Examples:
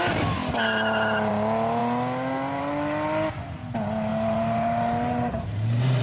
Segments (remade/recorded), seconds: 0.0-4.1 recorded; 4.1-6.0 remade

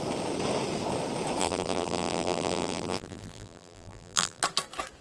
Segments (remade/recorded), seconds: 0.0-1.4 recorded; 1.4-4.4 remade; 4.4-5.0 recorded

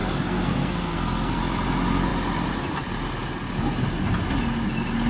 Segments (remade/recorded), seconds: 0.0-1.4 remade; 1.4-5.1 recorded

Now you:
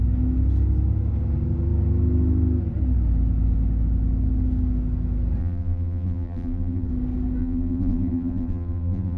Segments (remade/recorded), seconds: 0.0-5.4 recorded; 5.4-6.9 remade; 6.9-7.4 recorded; 7.4-9.2 remade

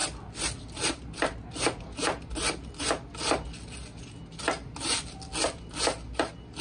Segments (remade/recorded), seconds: 0.0-6.6 recorded

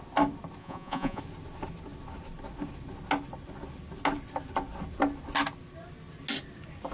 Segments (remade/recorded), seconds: 0.0-0.6 recorded; 0.6-1.2 remade; 1.2-6.9 recorded

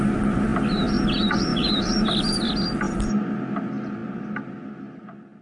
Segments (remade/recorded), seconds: 0.0-1.5 recorded; 1.5-2.5 remade; 2.5-5.4 recorded

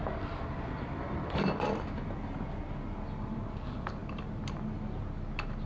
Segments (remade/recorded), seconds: 0.0-5.7 recorded